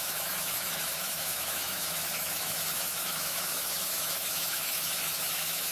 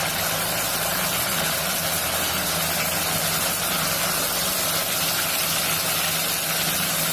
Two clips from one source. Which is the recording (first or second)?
second